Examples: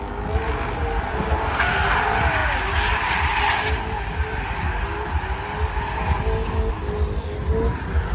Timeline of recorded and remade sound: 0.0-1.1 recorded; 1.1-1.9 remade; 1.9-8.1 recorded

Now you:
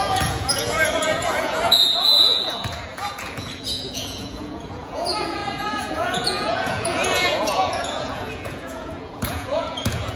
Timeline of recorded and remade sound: 0.0-10.2 remade

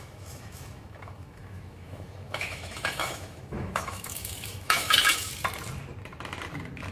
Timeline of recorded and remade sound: 0.0-5.3 remade; 5.3-6.9 recorded